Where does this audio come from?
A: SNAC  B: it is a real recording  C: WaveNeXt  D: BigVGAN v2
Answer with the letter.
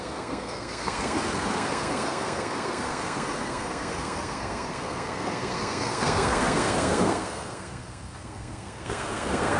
A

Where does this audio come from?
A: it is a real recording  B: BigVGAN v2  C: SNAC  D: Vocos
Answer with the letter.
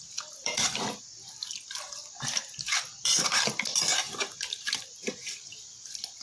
B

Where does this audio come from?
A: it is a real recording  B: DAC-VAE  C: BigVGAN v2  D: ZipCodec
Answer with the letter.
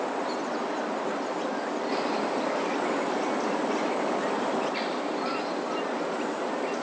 A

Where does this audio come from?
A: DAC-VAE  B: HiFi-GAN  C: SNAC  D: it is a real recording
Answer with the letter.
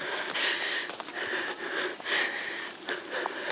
D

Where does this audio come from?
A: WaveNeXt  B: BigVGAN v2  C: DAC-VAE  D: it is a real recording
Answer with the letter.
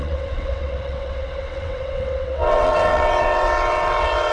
A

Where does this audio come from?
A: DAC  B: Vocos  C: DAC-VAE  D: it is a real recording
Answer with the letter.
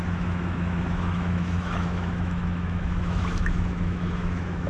C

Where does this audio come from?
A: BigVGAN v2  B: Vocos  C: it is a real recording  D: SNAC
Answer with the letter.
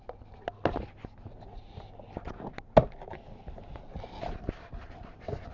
C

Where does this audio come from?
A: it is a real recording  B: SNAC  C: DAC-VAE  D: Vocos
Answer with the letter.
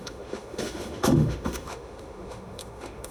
C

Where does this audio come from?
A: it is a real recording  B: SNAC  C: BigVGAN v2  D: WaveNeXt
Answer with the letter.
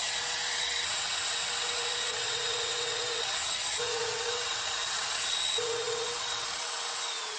D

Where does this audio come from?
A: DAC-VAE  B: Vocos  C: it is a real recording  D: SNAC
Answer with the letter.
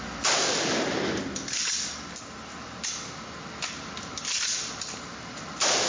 C